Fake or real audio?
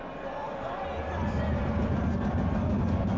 real